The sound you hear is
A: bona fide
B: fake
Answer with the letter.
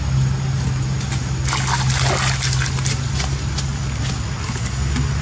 A